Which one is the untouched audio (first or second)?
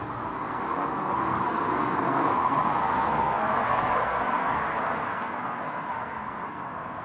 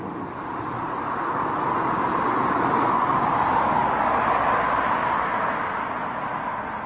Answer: second